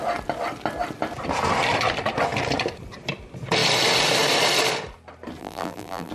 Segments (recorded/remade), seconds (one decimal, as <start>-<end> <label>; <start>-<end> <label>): 0.0-5.4 recorded; 5.4-6.1 remade